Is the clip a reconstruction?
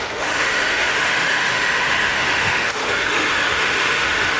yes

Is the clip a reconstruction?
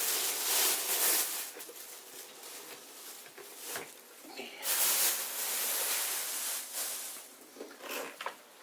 no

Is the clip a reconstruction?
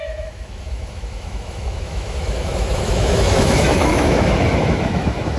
yes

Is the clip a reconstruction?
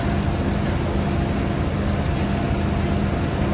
no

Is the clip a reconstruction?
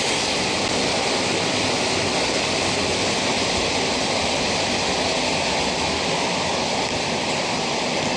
no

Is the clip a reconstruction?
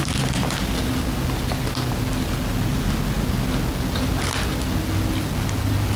no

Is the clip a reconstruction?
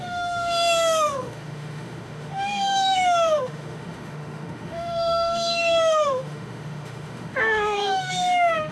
yes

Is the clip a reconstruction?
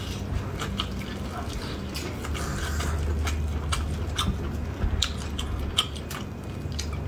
no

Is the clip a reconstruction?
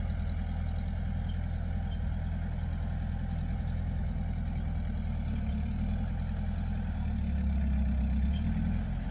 no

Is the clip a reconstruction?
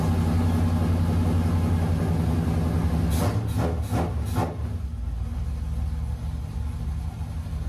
no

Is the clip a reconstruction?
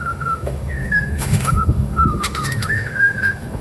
yes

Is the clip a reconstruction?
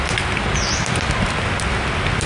no